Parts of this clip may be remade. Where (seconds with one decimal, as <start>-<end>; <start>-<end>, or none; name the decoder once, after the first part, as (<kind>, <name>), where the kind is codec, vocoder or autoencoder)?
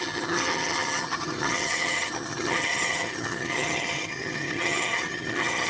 0.0-5.7 (vocoder, HiFi-GAN)